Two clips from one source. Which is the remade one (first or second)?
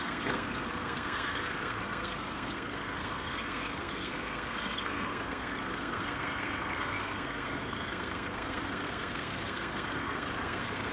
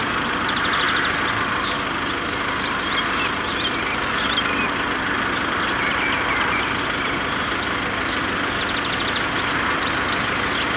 first